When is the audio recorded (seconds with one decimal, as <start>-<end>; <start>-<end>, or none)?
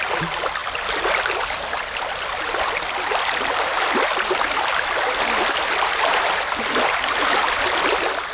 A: 0.0-8.3